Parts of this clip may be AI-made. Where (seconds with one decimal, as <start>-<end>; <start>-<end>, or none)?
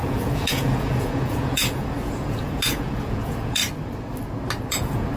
0.0-3.6; 4.7-5.2